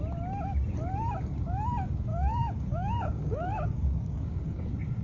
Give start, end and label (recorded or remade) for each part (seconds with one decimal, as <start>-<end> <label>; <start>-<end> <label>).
0.0-2.1 recorded; 2.1-4.6 remade; 4.6-5.0 recorded